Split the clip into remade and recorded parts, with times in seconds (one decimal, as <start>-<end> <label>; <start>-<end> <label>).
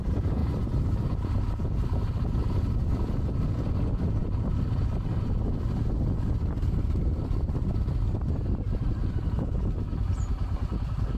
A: 0.0-9.0 remade; 9.0-11.2 recorded